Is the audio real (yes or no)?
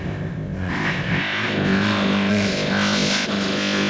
no